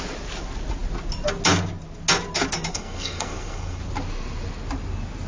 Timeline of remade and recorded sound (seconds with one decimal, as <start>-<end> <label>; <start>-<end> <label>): 0.0-2.7 recorded; 2.7-3.8 remade; 3.8-5.3 recorded